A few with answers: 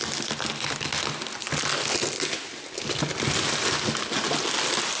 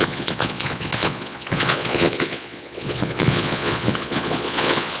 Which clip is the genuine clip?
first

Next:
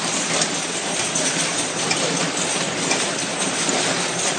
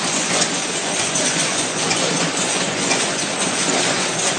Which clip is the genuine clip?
first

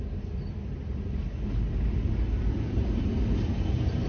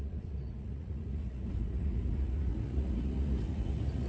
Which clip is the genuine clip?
first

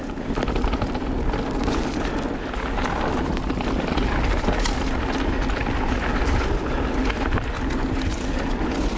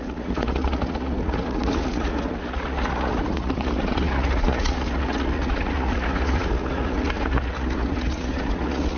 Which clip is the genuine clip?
first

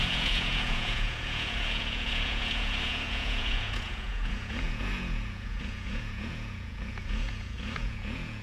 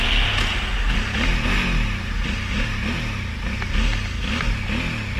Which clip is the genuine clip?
second